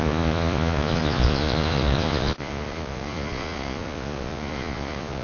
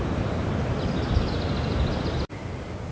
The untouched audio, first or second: second